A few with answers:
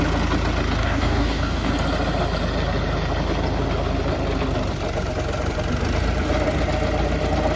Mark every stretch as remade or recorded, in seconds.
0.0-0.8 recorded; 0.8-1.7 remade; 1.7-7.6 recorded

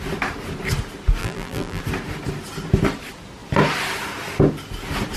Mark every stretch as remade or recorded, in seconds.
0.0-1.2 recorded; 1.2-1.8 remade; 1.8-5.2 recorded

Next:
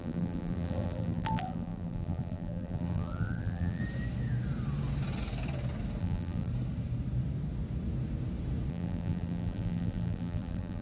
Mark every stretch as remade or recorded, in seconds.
0.0-3.8 remade; 3.8-6.0 recorded; 6.0-6.5 remade; 6.5-8.7 recorded; 8.7-10.8 remade

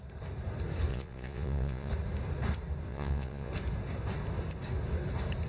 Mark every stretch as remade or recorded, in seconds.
0.0-0.9 recorded; 0.9-1.9 remade; 1.9-2.9 recorded; 2.9-3.5 remade; 3.5-5.5 recorded

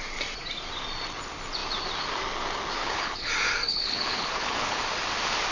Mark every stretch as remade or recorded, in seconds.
0.0-2.8 recorded; 2.8-3.3 remade; 3.3-3.7 recorded; 3.7-4.8 remade; 4.8-5.5 recorded